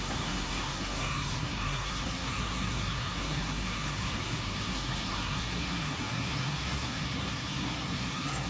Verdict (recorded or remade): remade